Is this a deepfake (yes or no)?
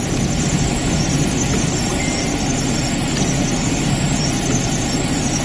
no